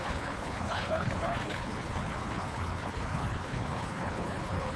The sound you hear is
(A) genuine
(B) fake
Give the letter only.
B